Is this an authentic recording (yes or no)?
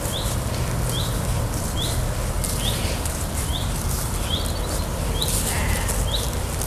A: yes